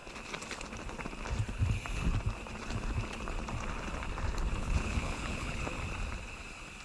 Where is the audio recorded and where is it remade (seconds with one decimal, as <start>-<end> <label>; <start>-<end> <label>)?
0.0-4.6 recorded; 4.6-5.6 remade; 5.6-6.8 recorded